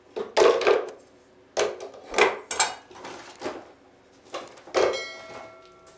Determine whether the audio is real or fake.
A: real